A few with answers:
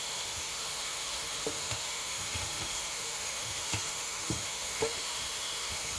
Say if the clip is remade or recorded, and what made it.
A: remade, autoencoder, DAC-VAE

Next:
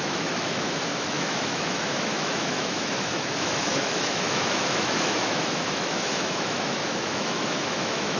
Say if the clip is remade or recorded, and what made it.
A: remade, autoencoder, DAC-VAE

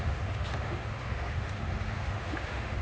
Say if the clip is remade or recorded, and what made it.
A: remade, autoencoder, DAC-VAE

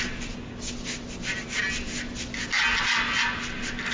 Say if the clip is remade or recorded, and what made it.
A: recorded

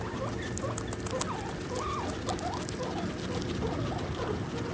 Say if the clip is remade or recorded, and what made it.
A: recorded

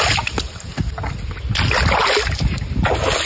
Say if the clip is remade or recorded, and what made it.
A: recorded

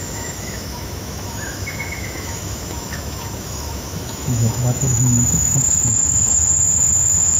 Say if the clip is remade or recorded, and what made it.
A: remade, autoencoder, DAC-VAE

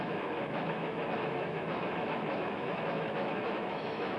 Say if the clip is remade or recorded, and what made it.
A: remade, autoencoder, DAC-VAE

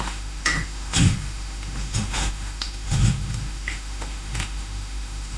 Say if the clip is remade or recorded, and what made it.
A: remade, autoencoder, DAC-VAE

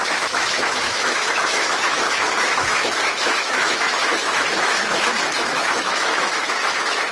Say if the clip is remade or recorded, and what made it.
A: remade, autoencoder, DAC-VAE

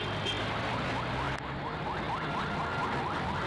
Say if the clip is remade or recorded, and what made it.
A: recorded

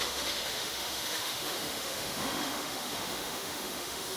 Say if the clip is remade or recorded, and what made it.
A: remade, autoencoder, DAC-VAE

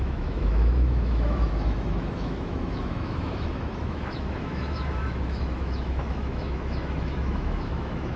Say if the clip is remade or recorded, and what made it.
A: remade, autoencoder, DAC-VAE